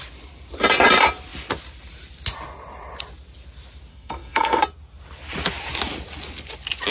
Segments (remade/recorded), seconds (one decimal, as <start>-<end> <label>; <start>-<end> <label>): 0.0-3.9 recorded; 3.9-4.6 remade; 4.6-6.9 recorded